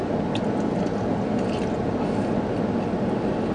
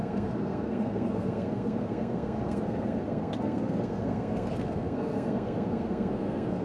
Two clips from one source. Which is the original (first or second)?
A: first